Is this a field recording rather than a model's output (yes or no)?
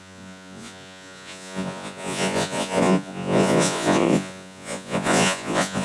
no